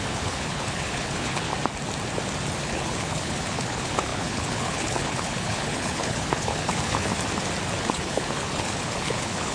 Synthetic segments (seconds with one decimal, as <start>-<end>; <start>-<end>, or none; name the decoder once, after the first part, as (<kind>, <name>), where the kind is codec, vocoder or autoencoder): 0.0-1.5 (codec, HILCodec); 2.6-7.1; 7.8-9.5